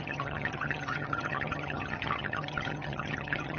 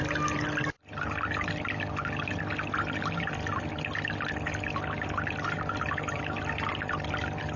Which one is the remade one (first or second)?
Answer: first